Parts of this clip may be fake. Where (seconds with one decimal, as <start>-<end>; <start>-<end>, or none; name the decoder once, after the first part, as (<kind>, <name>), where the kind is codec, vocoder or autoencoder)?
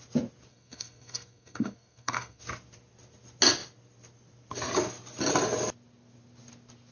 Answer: 0.5-2.4 (codec, SNAC)